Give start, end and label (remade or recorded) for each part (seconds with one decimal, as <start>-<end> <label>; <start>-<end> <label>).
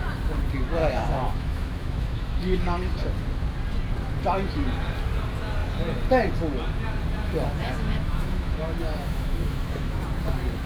0.0-0.8 recorded; 0.8-2.6 remade; 2.6-7.6 recorded; 7.6-10.0 remade; 10.0-10.7 recorded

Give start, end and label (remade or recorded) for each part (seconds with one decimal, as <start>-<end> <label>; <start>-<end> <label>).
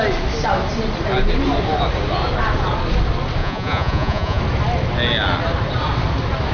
0.0-3.4 recorded; 3.4-4.4 remade; 4.4-6.5 recorded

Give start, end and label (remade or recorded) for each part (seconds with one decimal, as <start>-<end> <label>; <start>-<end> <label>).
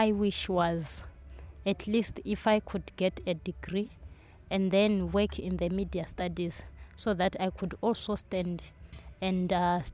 0.0-9.9 recorded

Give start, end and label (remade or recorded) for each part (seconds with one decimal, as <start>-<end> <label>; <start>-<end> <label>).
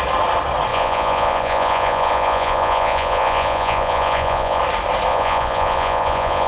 0.0-0.7 recorded; 0.7-4.6 remade; 4.6-5.1 recorded; 5.1-6.5 remade